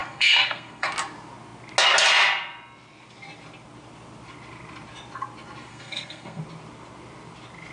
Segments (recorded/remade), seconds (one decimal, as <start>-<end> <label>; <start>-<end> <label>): 0.0-0.9 remade; 0.9-5.7 recorded; 5.7-6.4 remade; 6.4-7.7 recorded